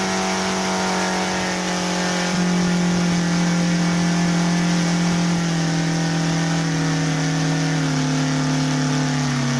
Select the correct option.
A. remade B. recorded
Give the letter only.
B